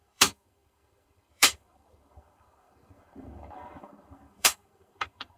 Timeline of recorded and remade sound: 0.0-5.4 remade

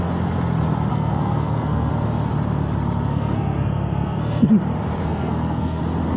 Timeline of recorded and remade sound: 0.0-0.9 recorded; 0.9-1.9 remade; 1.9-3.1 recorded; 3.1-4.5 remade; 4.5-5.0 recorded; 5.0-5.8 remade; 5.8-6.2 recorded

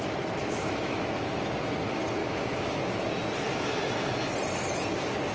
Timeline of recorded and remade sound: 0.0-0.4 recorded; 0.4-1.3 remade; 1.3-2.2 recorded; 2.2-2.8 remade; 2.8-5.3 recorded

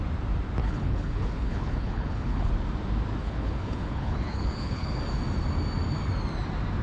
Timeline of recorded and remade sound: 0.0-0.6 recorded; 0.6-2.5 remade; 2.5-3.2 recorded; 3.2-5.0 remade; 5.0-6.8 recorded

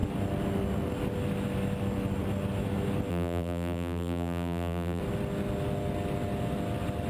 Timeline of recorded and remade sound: 0.0-3.1 recorded; 3.1-5.0 remade; 5.0-7.1 recorded

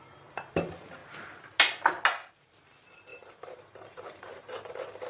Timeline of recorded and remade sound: 0.0-1.0 remade; 1.0-2.3 recorded; 2.3-5.1 remade

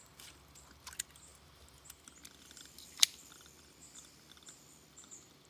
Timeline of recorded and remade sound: 0.0-5.5 recorded